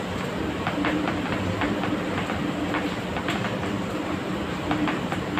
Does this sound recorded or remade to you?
recorded